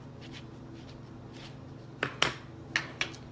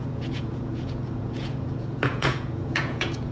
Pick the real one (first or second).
first